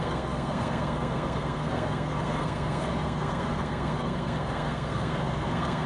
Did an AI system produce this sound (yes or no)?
yes